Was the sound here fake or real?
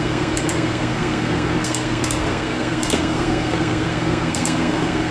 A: fake